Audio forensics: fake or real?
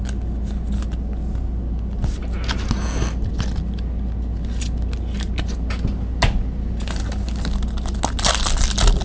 real